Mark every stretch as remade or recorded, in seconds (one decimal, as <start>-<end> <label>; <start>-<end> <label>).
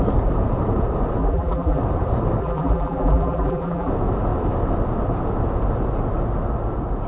0.0-1.2 recorded; 1.2-1.8 remade; 1.8-2.4 recorded; 2.4-3.9 remade; 3.9-7.1 recorded